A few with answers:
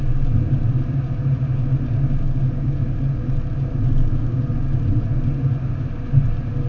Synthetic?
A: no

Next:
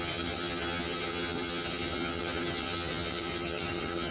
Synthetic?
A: yes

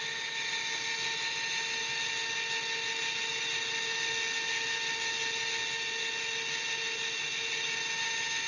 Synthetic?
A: no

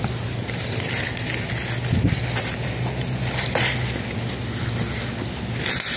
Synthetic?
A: no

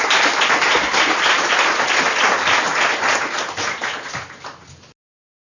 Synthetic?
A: no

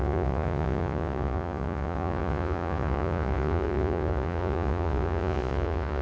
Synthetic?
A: yes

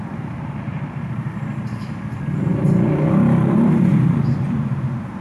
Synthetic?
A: yes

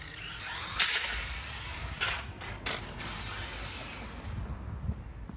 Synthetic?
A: no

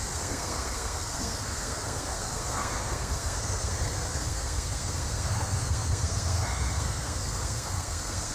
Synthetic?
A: yes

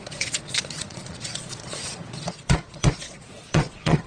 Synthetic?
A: yes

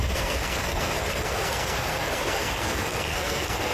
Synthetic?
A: yes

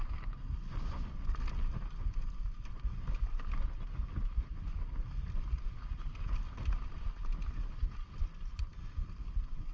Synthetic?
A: no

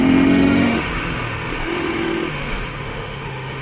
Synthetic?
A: yes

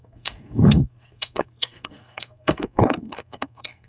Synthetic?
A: yes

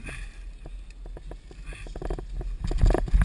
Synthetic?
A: no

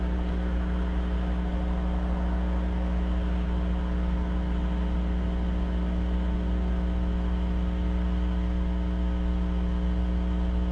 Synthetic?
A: no